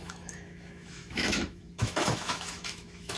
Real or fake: fake